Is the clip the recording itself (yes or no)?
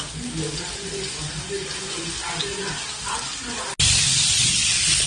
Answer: yes